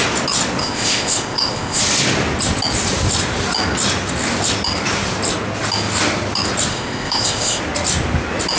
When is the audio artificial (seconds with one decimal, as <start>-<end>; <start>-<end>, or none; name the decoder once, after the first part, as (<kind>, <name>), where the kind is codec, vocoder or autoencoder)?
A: 0.6-1.8 (codec, ZipCodec); 6.7-7.6